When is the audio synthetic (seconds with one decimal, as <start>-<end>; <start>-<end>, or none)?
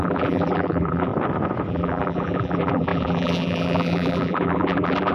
0.0-1.1; 1.7-5.1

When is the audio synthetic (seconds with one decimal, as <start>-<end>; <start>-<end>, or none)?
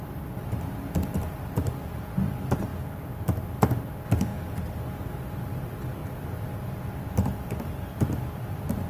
0.0-4.3; 5.0-8.9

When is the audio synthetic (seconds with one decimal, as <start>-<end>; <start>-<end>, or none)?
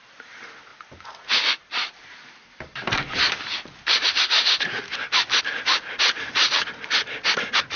0.7-5.4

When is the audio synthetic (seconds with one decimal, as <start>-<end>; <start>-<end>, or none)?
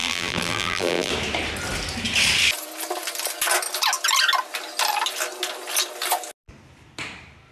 0.0-1.1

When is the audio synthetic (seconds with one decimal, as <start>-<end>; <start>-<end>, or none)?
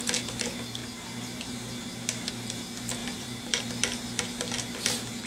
0.8-2.3; 3.0-3.6